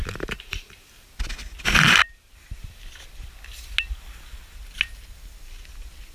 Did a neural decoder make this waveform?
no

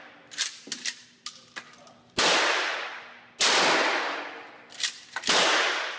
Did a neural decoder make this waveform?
no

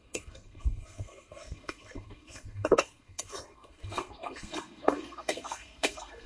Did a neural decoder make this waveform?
yes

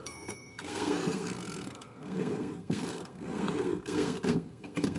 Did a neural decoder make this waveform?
yes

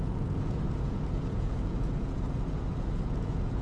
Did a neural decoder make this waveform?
yes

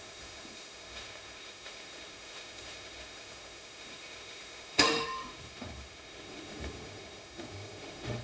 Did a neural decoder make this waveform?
yes